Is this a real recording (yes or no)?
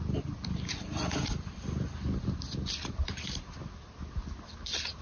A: yes